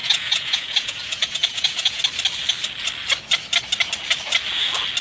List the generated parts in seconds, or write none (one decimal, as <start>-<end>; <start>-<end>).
0.0-2.0